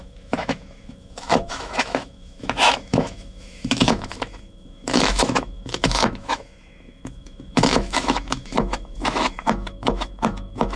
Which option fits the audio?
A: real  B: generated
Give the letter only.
B